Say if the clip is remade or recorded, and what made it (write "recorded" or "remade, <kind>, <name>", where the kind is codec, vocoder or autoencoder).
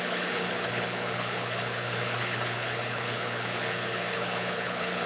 remade, codec, HILCodec